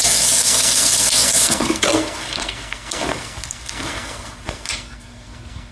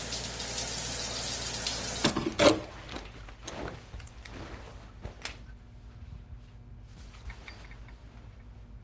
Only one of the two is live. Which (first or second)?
second